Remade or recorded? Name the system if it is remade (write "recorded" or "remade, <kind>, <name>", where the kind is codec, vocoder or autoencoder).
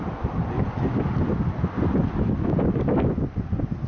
recorded